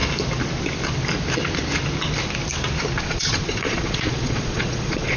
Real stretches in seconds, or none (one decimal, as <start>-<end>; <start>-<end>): 0.0-3.0